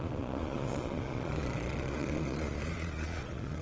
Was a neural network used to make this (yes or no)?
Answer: yes